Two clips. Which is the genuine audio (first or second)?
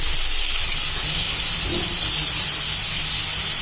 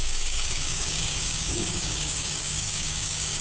first